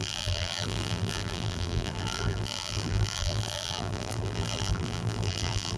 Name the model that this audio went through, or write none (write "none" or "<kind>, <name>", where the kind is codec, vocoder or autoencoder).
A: vocoder, BigVGAN v2